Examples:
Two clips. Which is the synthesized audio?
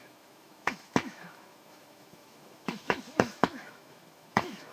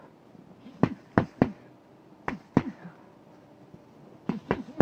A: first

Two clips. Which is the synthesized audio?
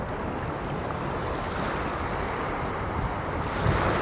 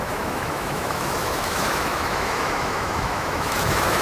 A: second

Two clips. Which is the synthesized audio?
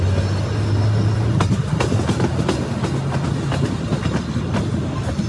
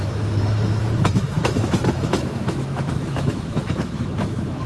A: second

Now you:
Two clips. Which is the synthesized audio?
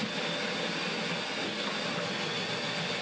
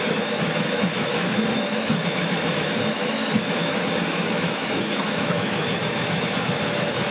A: second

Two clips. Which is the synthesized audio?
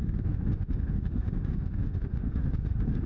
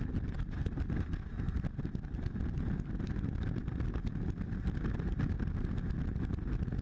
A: first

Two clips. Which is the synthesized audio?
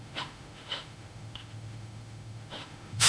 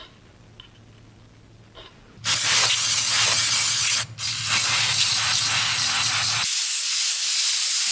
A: first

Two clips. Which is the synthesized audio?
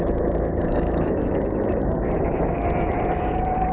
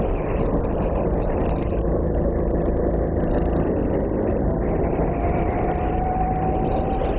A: first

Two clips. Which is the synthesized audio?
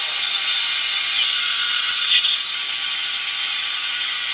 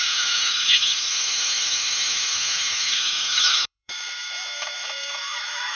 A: second